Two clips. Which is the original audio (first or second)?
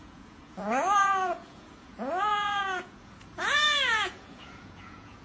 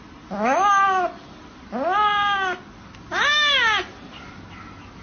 second